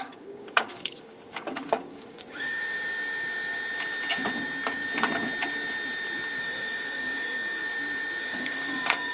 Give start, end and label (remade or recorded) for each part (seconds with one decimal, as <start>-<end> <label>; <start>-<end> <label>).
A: 0.0-2.6 remade; 2.6-6.4 recorded; 6.4-7.6 remade; 7.6-8.2 recorded; 8.2-9.1 remade